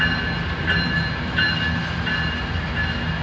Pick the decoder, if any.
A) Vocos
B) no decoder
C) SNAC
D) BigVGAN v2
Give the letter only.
B